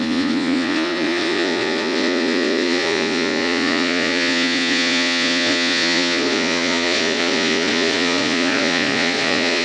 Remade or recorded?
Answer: remade